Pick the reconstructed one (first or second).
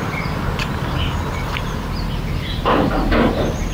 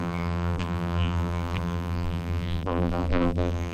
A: second